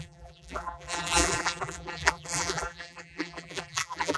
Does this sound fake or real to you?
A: fake